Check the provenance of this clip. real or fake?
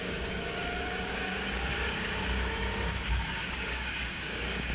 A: fake